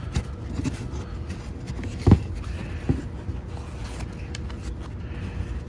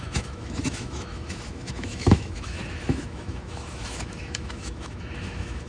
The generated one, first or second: second